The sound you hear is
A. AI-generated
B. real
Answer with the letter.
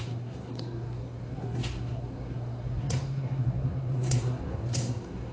A